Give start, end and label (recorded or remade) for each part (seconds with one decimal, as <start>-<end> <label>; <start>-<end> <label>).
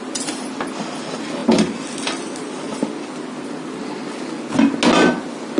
0.0-1.4 recorded; 1.4-2.3 remade; 2.3-5.6 recorded